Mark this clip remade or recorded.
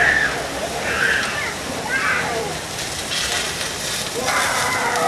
recorded